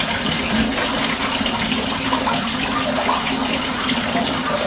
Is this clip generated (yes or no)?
no